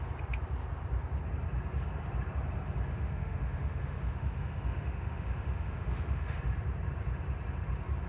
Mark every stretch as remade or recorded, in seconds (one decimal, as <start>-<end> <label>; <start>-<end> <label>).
0.0-2.9 recorded; 2.9-6.4 remade; 6.4-8.1 recorded